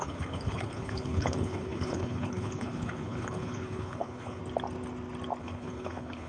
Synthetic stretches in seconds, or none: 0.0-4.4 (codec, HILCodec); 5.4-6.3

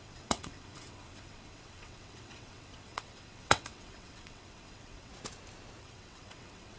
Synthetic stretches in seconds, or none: 0.0-5.1 (vocoder, WaveNeXt); 5.8-6.8

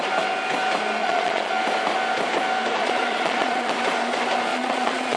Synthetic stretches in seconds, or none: 1.0-1.5 (vocoder, Vocos); 2.8-3.7; 4.5-5.2

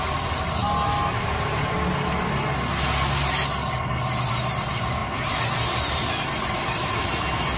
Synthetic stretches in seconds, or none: none

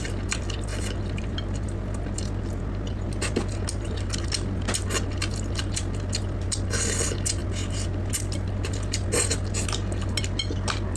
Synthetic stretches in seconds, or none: none

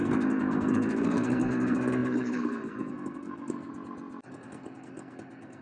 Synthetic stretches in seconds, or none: 0.0-3.7 (codec, SNAC); 4.3-5.6

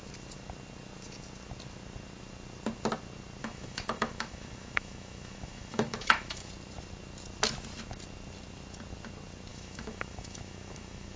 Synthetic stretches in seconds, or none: 3.4-6.5 (autoencoder, DAC-VAE); 9.5-11.2